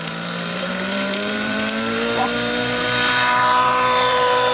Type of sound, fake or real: fake